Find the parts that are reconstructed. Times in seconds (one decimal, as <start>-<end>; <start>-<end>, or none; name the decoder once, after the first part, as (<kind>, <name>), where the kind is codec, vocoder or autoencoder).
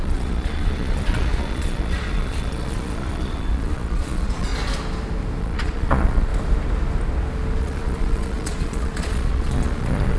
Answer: 0.0-4.5 (vocoder, Vocos); 5.4-6.3; 7.6-10.2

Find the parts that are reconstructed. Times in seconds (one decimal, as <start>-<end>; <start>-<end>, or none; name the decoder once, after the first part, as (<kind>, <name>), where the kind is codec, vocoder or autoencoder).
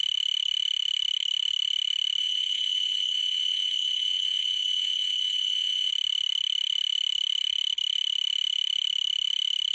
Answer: 2.2-5.9 (vocoder, Vocos)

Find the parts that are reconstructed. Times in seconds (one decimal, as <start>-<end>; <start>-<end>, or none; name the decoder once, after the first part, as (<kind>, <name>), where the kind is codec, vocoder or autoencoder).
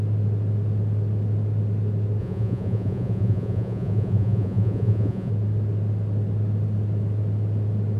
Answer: 2.2-5.3 (vocoder, Vocos)